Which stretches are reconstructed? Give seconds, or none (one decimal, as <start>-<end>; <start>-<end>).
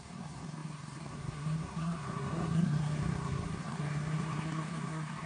0.0-5.3